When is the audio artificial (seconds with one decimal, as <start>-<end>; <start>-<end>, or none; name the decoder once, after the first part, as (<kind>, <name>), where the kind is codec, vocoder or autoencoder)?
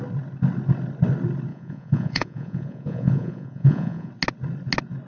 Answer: 1.5-4.1 (vocoder, Vocos)